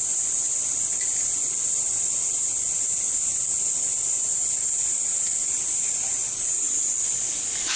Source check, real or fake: real